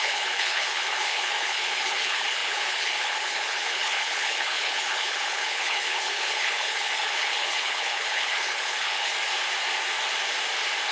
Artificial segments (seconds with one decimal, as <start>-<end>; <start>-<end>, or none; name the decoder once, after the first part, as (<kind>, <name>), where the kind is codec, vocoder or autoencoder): 0.0-9.1 (codec, HILCodec)